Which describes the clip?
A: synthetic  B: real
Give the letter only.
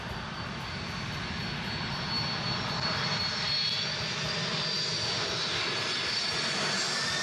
B